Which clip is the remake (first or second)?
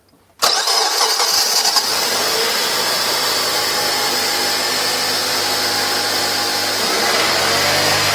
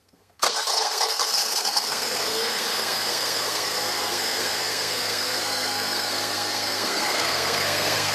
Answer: second